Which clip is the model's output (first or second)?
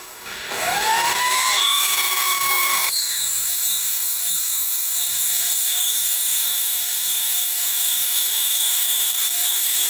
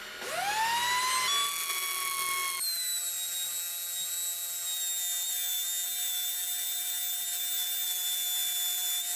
first